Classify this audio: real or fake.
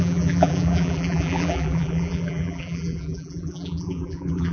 fake